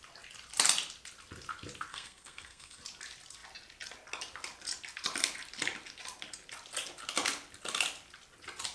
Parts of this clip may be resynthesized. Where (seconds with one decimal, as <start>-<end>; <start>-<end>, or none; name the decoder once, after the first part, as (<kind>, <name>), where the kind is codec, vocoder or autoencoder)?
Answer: 1.9-2.8 (codec, SNAC)